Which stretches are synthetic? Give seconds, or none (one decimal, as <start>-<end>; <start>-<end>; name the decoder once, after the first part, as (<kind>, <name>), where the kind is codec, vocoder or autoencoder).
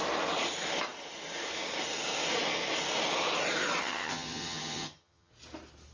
3.8-5.3 (vocoder, HiFi-GAN)